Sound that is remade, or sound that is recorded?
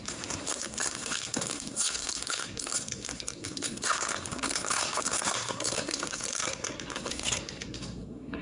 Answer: remade